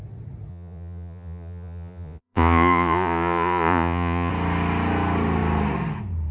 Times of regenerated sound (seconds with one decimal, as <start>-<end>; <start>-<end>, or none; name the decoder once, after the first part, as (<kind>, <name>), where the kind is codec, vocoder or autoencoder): 0.5-4.3 (vocoder, Vocos)